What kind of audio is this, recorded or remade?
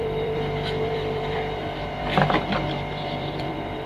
remade